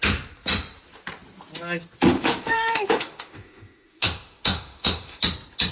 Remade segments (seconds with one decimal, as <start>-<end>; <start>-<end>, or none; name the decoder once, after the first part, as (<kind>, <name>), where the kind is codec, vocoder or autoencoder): 2.1-5.2 (autoencoder, DAC-VAE)